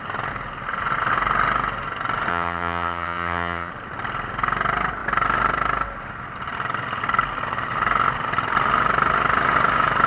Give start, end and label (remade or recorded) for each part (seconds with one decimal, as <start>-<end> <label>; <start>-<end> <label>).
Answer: 0.0-2.3 recorded; 2.3-3.7 remade; 3.7-10.1 recorded